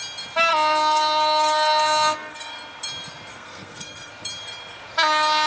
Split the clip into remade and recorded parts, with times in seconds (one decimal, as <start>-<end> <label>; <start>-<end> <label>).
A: 0.0-0.5 recorded; 0.5-2.5 remade; 2.5-3.3 recorded; 3.3-4.1 remade; 4.1-5.5 recorded